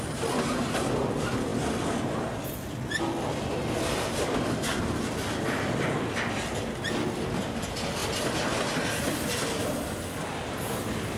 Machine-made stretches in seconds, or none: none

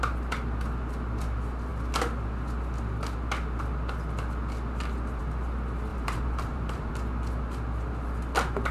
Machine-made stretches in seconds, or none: 5.9-6.9 (vocoder, BigVGAN v2)

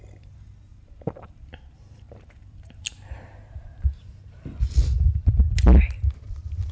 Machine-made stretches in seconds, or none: 0.7-4.7 (vocoder, BigVGAN v2)